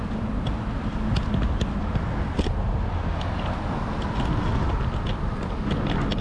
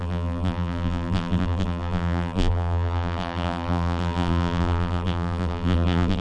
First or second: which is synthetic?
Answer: second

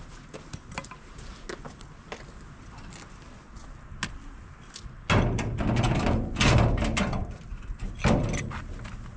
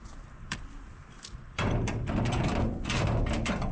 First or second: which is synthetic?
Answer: second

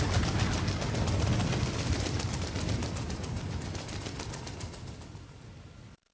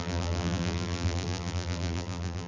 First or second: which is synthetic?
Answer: second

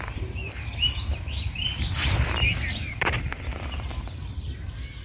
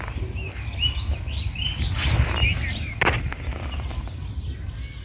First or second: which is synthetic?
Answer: first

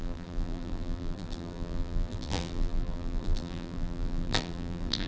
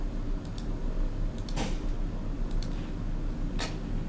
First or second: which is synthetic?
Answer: first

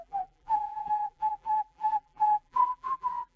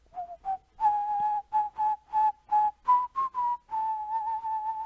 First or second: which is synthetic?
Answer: first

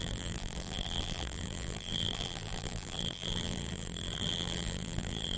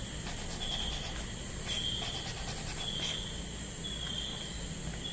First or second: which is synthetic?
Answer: first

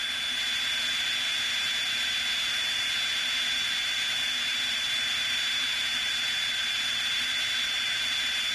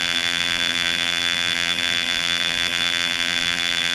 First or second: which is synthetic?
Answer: second